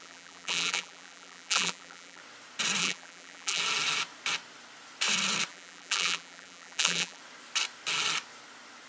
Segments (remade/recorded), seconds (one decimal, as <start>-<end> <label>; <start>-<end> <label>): 0.0-2.2 remade; 2.2-2.8 recorded; 2.8-3.6 remade; 3.6-5.5 recorded; 5.5-7.2 remade; 7.2-8.9 recorded